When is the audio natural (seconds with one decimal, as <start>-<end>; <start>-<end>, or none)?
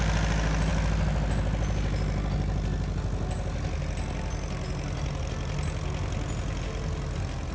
0.0-7.5